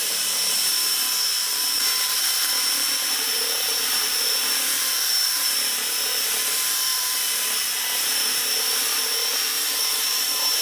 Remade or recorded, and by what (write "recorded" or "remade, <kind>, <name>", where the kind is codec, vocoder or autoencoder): remade, vocoder, BigVGAN v2